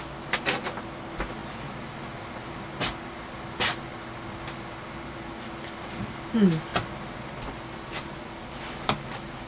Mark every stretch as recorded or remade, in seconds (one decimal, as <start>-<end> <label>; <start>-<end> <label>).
0.0-9.5 recorded